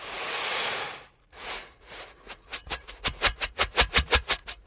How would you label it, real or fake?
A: fake